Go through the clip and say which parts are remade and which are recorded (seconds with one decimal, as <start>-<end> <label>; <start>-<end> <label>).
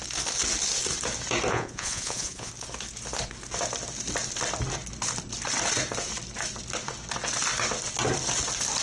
0.0-1.5 recorded; 1.5-2.5 remade; 2.5-8.8 recorded